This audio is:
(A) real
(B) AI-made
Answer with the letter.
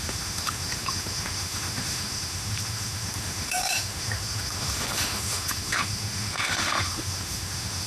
B